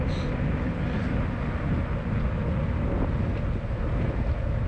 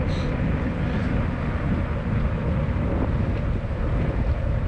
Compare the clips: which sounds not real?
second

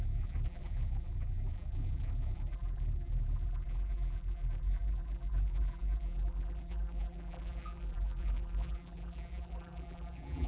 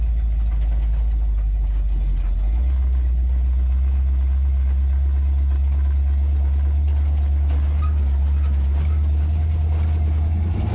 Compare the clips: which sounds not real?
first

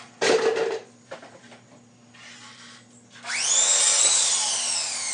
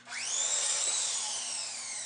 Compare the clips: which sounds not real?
second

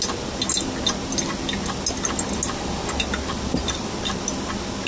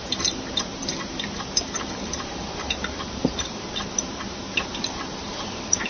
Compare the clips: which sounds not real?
second